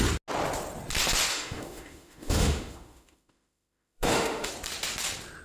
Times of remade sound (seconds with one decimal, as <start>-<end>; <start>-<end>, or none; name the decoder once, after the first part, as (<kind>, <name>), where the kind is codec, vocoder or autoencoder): 1.3-4.5 (autoencoder, DAC-VAE)